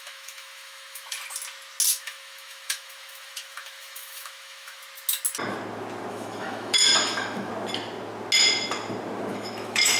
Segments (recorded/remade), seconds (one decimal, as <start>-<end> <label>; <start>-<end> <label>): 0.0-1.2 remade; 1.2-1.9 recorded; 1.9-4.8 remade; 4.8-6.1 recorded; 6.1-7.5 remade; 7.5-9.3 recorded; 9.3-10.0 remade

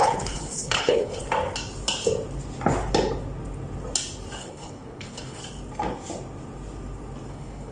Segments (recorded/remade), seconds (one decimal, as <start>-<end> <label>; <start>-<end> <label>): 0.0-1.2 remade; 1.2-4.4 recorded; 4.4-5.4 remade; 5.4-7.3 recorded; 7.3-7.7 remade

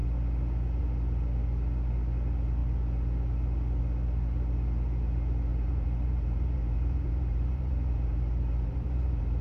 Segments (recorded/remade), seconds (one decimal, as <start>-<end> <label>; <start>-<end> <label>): 0.0-5.5 recorded; 5.5-9.4 remade

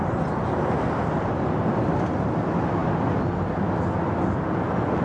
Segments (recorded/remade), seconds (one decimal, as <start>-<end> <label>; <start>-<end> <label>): 0.0-5.0 recorded

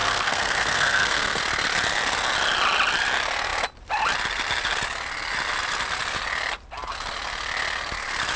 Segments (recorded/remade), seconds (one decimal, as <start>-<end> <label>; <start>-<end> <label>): 0.0-1.4 remade; 1.4-8.4 recorded

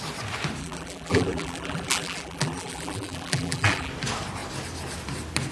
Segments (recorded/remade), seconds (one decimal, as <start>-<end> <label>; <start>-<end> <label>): 0.0-0.6 recorded; 0.6-3.9 remade; 3.9-5.5 recorded

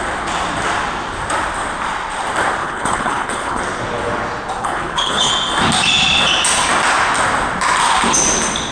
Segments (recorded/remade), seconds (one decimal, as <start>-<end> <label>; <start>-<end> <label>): 0.0-2.6 recorded; 2.6-3.6 remade; 3.6-4.6 recorded; 4.6-5.3 remade; 5.3-8.7 recorded